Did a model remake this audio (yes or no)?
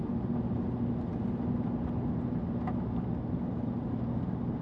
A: no